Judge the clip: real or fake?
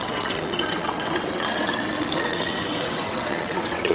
fake